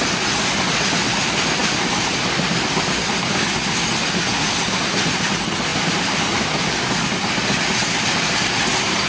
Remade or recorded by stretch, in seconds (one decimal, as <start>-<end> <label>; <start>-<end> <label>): 0.0-1.6 recorded; 1.6-2.5 remade; 2.5-5.7 recorded; 5.7-6.8 remade; 6.8-9.1 recorded